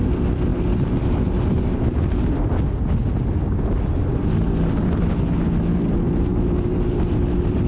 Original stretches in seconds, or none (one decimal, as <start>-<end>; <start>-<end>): 0.0-7.7